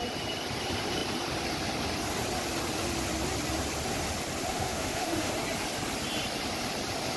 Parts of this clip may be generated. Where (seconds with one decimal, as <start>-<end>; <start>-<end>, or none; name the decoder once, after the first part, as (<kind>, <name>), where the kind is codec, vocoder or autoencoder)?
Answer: 4.5-5.3 (autoencoder, DAC-VAE)